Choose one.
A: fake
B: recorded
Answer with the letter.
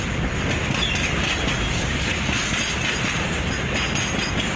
B